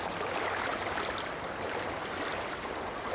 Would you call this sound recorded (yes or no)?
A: yes